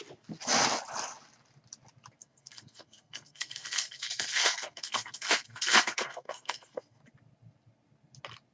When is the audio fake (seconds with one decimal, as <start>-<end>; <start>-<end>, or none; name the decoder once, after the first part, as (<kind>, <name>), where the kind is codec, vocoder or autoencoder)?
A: 2.2-7.0 (codec, SNAC)